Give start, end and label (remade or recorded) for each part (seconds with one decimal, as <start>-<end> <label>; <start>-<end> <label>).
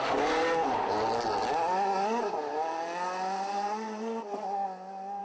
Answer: 0.0-5.2 recorded